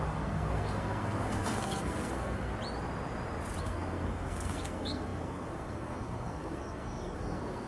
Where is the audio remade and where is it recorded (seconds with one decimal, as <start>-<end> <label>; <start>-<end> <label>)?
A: 0.0-2.5 remade; 2.5-3.6 recorded; 3.6-7.7 remade